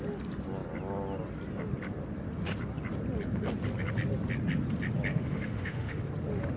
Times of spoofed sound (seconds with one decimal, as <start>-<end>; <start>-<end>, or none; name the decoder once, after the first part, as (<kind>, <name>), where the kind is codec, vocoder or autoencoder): 5.1-6.0 (autoencoder, DAC-VAE)